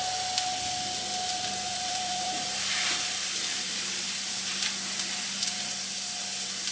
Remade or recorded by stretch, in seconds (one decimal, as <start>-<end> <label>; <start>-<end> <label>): 0.0-1.7 recorded; 1.7-5.7 remade; 5.7-6.7 recorded